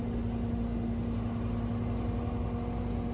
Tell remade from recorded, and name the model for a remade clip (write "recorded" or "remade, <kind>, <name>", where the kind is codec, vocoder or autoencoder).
recorded